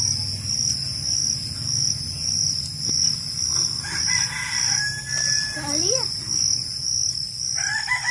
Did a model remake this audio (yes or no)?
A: no